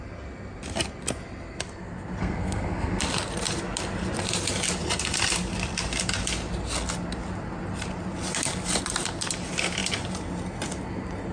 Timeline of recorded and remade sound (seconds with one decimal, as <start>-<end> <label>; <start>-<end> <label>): 0.0-2.2 recorded; 2.2-3.0 remade; 3.0-11.3 recorded